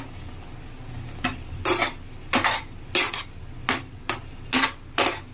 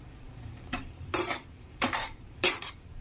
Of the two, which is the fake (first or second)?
second